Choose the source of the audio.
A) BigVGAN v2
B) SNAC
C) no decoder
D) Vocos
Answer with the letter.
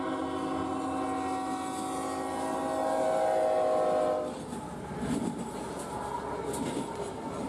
C